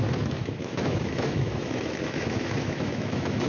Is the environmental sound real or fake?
fake